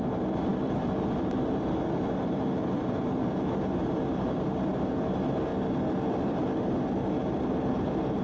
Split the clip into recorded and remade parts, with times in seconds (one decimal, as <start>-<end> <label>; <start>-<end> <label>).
0.0-5.5 remade; 5.5-6.2 recorded; 6.2-8.2 remade